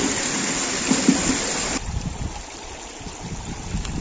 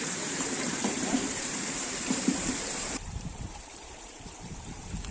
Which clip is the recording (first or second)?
first